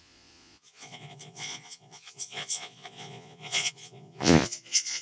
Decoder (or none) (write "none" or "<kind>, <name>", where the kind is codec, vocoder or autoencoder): vocoder, Vocos